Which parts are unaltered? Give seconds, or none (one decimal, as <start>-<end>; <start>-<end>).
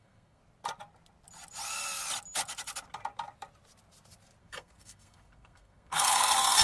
0.4-4.4